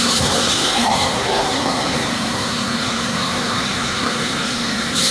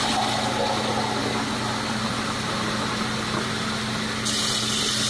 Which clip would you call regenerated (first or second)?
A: first